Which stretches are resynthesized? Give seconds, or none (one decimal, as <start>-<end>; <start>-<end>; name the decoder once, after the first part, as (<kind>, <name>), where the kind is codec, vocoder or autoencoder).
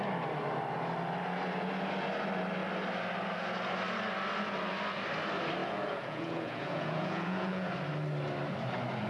5.6-7.7 (vocoder, Vocos)